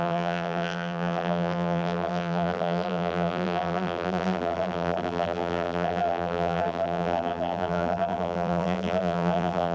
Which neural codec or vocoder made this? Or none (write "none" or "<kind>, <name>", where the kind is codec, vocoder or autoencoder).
vocoder, BigVGAN v2